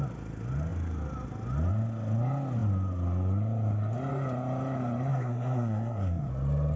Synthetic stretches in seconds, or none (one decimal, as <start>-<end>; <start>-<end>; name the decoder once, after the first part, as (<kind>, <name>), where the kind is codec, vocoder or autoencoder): 5.1-6.3 (codec, SNAC)